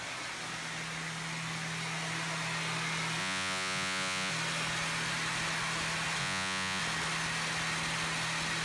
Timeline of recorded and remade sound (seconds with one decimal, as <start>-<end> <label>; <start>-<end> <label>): 0.0-3.2 recorded; 3.2-4.3 remade; 4.3-6.2 recorded; 6.2-6.8 remade; 6.8-8.6 recorded